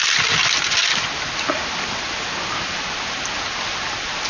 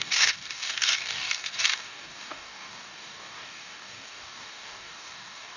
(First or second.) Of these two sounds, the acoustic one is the first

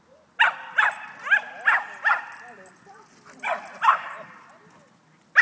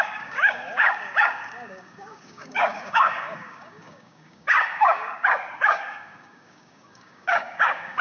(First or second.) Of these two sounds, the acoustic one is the first